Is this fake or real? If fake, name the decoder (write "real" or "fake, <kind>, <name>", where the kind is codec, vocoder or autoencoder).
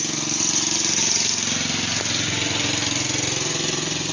real